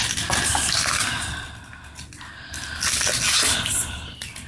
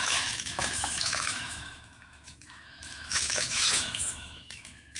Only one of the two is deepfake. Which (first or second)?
second